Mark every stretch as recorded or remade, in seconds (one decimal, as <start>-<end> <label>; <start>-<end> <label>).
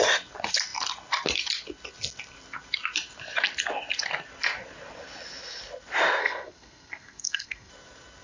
0.0-6.2 recorded; 6.2-7.7 remade; 7.7-8.2 recorded